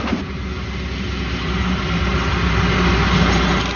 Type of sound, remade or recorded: recorded